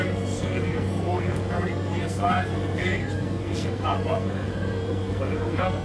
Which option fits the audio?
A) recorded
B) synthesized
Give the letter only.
B